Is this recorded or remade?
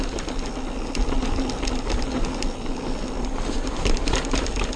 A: recorded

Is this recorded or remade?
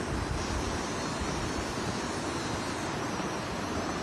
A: recorded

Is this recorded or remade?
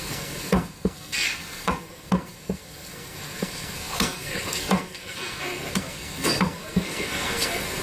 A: remade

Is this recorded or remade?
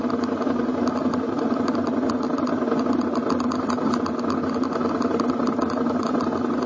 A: recorded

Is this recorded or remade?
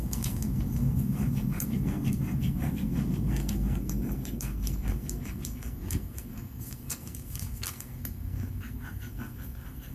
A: remade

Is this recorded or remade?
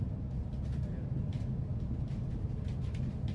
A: recorded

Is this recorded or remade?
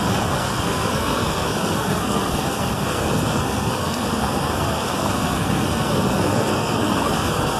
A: remade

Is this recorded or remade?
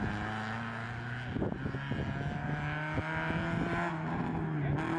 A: recorded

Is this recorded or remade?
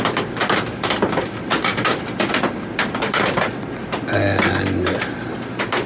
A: recorded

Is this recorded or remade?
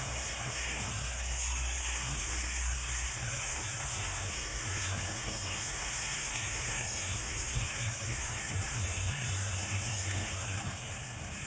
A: remade